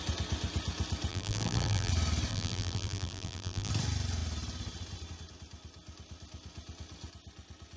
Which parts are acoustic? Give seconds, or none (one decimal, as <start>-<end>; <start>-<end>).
0.0-1.1; 1.9-2.3; 3.7-7.8